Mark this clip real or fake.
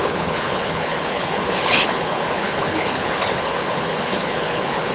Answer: fake